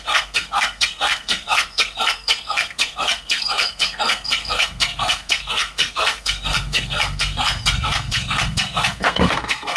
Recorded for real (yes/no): no